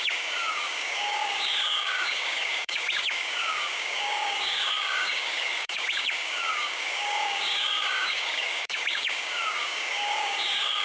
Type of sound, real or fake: fake